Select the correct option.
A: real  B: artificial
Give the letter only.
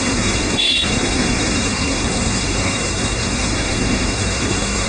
B